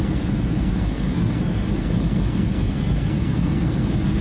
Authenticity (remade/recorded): remade